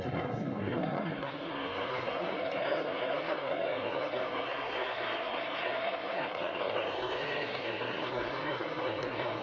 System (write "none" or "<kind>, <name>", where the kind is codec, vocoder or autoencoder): codec, SNAC